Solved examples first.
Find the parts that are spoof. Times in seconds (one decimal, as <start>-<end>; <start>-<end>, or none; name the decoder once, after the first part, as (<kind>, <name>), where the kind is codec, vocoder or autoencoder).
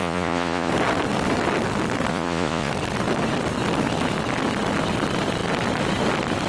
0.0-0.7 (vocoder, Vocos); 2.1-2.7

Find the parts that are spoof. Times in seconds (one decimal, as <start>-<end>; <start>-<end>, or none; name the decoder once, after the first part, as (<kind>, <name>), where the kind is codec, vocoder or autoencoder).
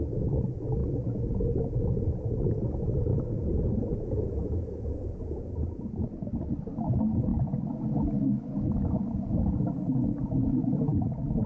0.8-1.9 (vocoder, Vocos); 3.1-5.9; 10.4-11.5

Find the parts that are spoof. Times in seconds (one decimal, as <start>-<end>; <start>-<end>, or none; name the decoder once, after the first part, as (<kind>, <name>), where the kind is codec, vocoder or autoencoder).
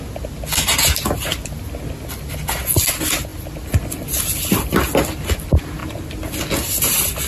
none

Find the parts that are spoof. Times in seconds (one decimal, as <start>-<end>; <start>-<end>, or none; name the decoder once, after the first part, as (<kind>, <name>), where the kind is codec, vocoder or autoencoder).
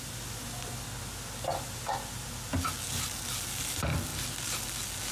none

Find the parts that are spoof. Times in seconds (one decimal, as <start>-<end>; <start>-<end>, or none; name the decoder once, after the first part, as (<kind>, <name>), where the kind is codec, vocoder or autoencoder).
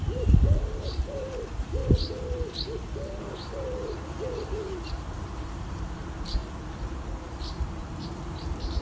0.0-1.8 (vocoder, BigVGAN v2); 3.2-6.4; 7.4-8.8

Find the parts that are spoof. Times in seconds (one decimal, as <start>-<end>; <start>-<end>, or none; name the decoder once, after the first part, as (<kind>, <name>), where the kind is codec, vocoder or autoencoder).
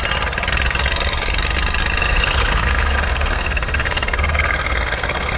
2.0-5.4 (codec, SNAC)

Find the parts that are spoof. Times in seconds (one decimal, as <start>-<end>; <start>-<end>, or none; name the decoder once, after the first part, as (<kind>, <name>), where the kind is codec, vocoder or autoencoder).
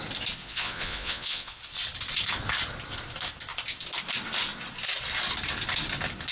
0.4-1.6 (vocoder, Vocos)